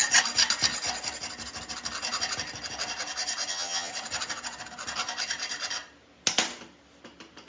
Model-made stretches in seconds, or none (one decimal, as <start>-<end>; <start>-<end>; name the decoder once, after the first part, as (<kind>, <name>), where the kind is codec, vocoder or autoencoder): 3.5-3.9 (vocoder, HiFi-GAN)